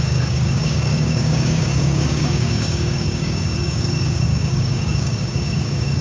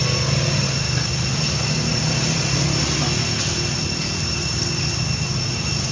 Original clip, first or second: second